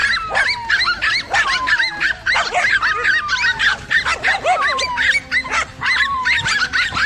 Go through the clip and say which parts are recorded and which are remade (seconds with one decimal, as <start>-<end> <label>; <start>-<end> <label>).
0.0-7.1 recorded